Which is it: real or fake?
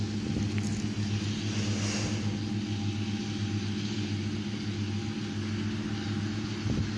real